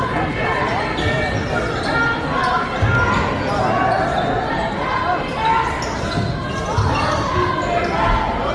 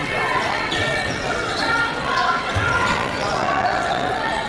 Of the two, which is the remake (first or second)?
second